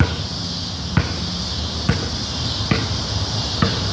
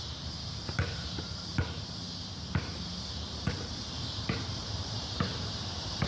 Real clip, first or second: first